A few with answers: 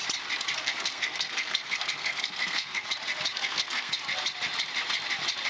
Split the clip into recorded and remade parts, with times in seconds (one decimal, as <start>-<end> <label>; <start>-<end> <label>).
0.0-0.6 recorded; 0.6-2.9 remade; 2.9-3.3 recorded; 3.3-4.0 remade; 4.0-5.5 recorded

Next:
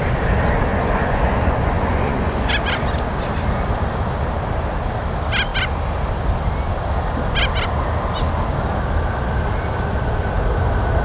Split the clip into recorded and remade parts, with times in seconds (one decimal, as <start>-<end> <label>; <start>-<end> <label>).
0.0-0.7 recorded; 0.7-2.5 remade; 2.5-11.0 recorded

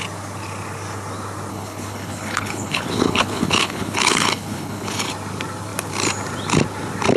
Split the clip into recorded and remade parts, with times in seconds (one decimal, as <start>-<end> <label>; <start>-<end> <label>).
0.0-1.5 recorded; 1.5-5.1 remade; 5.1-7.2 recorded